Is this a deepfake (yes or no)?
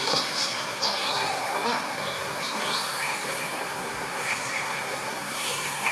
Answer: yes